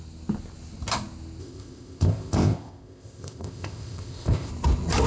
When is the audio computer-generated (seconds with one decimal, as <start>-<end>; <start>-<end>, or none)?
1.4-4.5